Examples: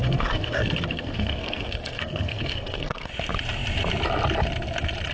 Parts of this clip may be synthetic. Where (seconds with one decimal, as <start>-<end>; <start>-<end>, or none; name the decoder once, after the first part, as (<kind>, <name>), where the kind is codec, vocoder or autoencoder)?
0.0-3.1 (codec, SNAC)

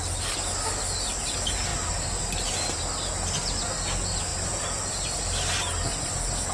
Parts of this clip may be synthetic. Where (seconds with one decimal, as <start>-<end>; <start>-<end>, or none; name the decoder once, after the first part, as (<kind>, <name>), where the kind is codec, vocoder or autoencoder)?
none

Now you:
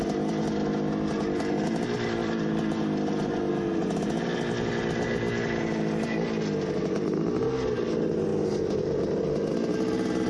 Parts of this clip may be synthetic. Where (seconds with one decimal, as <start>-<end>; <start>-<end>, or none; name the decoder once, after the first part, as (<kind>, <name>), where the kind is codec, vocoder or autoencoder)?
2.2-3.5 (vocoder, BigVGAN v2)

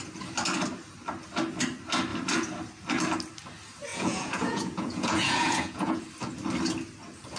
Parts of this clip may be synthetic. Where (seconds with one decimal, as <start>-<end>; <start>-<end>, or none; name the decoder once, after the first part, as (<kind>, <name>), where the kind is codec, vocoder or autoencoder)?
3.9-6.0 (vocoder, Vocos)